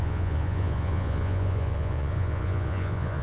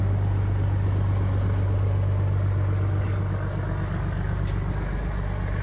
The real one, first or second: second